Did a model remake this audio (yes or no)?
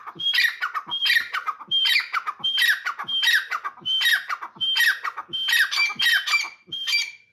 no